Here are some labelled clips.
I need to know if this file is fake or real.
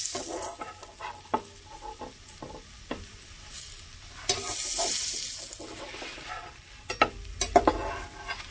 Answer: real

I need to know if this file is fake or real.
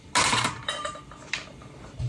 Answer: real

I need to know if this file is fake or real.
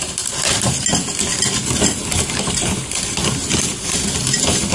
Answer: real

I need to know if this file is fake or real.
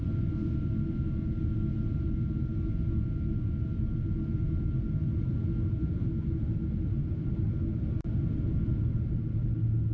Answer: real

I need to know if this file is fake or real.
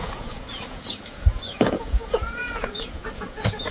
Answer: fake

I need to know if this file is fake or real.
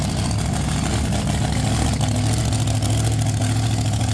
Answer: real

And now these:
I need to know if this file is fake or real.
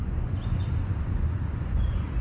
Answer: fake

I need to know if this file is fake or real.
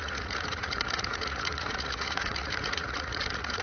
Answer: fake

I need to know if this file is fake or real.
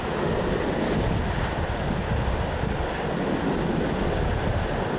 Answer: real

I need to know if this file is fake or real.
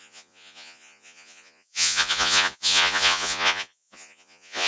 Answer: fake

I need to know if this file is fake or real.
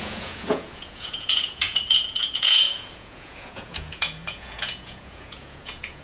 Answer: fake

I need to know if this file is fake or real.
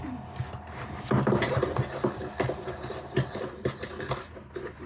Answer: real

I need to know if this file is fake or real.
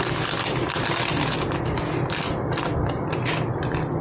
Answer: real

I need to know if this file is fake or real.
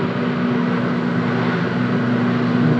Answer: real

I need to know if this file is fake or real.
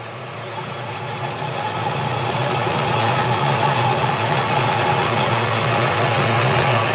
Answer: fake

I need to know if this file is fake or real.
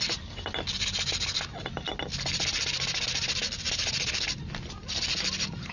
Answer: real